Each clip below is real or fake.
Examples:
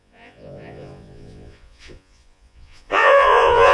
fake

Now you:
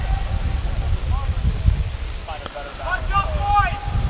real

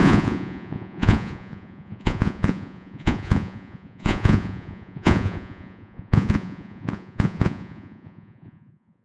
fake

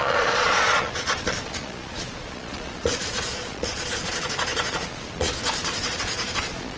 fake